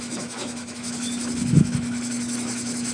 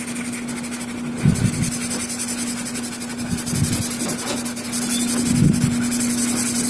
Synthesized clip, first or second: first